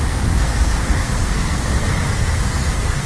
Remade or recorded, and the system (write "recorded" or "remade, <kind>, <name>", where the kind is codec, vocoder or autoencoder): remade, codec, SNAC